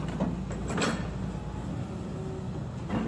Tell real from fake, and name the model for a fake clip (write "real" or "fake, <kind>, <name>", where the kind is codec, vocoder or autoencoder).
real